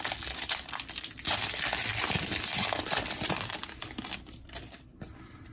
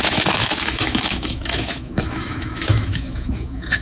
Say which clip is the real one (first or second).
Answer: first